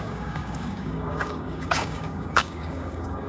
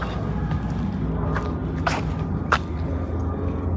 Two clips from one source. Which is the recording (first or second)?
second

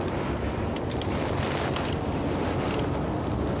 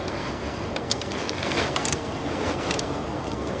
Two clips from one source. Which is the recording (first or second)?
first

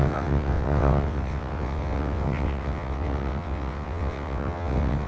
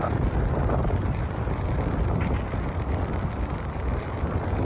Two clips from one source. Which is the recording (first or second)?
second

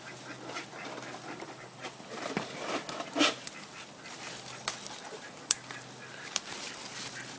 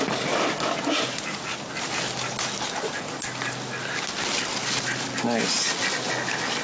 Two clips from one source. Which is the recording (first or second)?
second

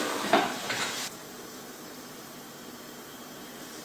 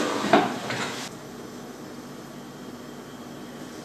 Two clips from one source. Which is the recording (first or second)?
second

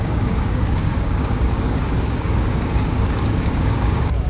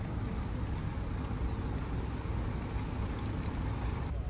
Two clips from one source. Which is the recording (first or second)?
second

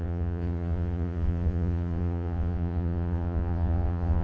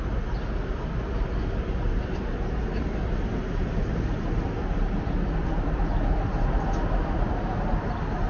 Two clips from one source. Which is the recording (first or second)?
second